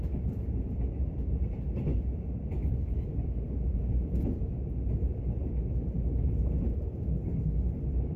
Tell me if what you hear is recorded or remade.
recorded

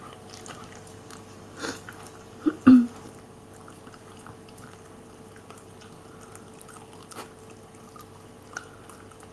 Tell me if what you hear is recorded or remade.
recorded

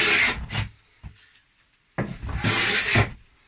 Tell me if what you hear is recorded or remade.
recorded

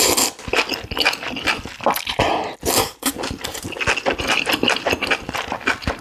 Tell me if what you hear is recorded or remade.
recorded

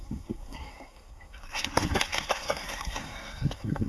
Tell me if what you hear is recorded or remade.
remade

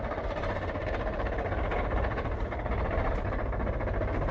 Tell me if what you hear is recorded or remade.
recorded